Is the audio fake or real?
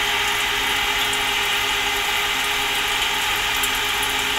real